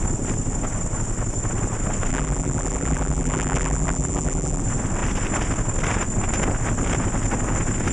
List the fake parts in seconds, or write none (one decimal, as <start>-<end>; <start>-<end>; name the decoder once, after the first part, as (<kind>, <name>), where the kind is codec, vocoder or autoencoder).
2.1-4.6 (vocoder, BigVGAN v2)